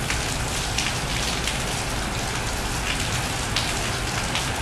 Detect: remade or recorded recorded